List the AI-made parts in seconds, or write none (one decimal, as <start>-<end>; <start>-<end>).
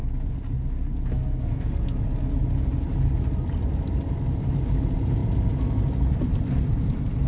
none